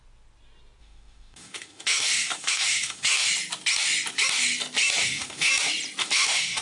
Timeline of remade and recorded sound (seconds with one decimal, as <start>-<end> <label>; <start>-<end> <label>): 0.0-0.8 recorded; 0.8-3.3 remade; 3.3-5.0 recorded; 5.0-5.5 remade; 5.5-6.0 recorded; 6.0-6.6 remade